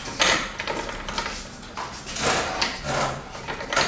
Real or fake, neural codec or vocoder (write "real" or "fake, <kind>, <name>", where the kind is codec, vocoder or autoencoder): real